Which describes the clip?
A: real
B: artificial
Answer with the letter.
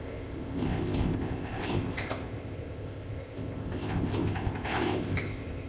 B